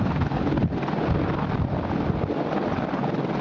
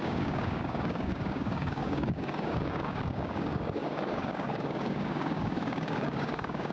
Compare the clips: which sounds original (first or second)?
first